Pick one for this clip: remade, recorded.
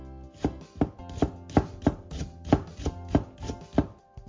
recorded